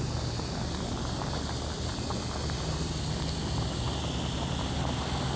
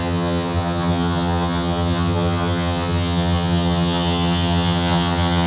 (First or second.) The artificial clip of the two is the second